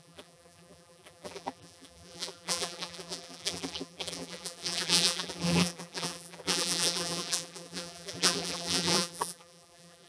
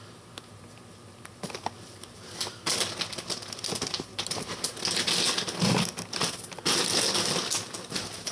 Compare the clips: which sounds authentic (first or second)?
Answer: second